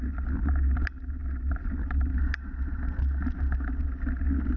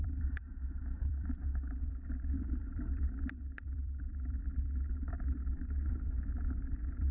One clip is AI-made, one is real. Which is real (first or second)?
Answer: first